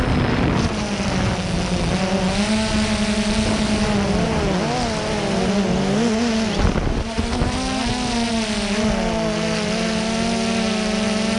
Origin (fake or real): real